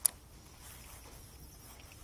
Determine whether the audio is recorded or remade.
recorded